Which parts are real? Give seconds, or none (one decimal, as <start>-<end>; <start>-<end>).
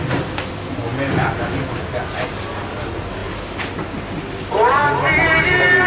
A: 0.0-5.9